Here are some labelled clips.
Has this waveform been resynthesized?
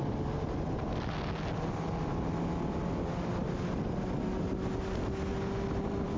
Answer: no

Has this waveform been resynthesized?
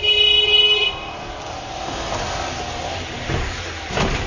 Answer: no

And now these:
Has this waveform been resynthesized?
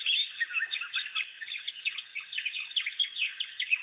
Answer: no